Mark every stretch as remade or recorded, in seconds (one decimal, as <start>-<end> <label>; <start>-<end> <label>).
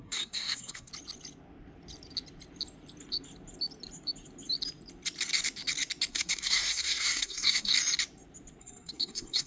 0.0-0.9 remade; 0.9-6.1 recorded; 6.1-7.7 remade; 7.7-8.6 recorded; 8.6-9.5 remade